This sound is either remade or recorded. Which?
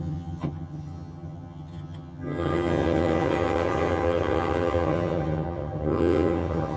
remade